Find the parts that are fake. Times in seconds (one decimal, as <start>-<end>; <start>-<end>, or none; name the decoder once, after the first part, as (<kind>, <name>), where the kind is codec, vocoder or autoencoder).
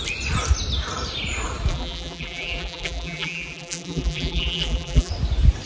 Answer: 1.7-5.1 (vocoder, BigVGAN v2)